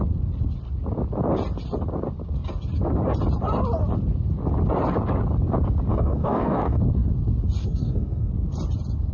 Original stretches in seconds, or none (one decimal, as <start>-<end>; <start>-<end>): 0.0-5.9; 6.8-7.6; 8.3-9.1